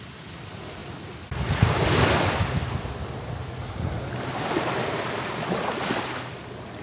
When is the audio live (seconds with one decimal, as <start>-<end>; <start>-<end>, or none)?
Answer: 0.0-6.8